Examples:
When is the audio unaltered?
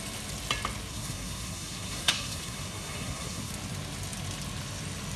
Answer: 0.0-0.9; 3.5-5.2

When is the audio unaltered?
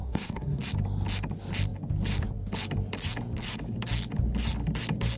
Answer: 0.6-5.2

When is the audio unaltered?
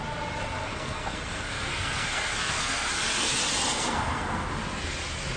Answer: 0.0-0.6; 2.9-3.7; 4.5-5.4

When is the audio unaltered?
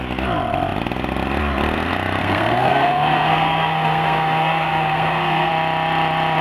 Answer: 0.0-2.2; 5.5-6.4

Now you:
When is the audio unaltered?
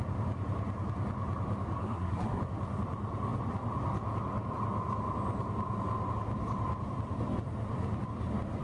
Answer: 0.0-1.8; 2.4-8.6